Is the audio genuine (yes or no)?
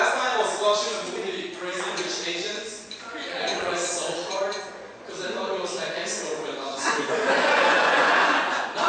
no